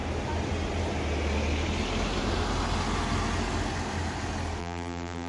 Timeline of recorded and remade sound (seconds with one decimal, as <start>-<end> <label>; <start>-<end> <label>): 0.0-4.6 recorded; 4.6-5.3 remade